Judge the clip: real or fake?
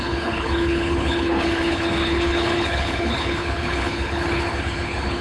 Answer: fake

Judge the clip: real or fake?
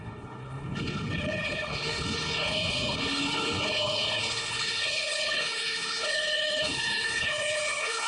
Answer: fake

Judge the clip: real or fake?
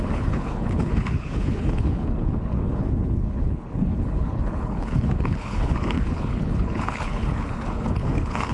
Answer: fake